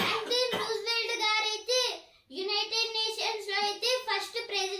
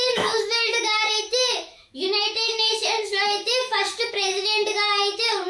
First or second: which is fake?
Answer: second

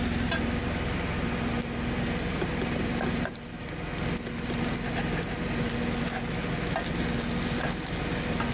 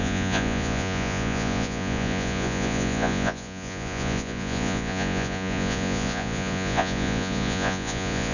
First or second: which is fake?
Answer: second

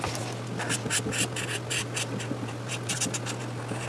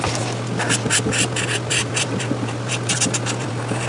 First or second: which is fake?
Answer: second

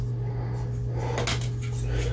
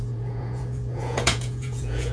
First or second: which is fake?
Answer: second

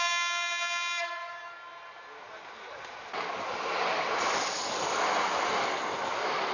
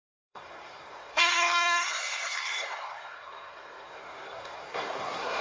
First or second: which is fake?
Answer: second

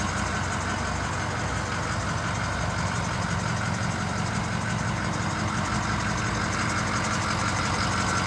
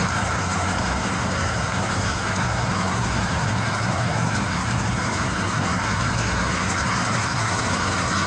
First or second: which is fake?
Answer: second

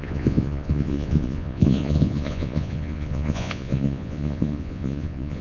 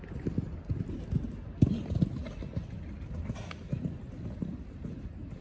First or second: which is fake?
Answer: first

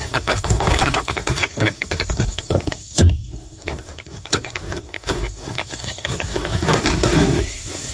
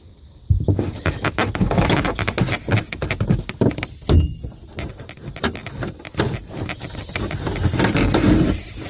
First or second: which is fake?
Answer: first